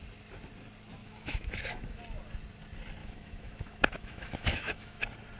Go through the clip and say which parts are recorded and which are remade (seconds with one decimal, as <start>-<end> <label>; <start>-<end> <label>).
0.0-1.0 recorded; 1.0-2.0 remade; 2.0-3.0 recorded; 3.0-5.0 remade; 5.0-5.4 recorded